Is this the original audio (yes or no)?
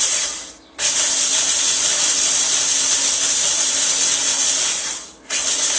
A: yes